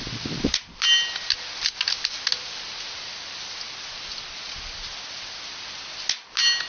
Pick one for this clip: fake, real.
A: real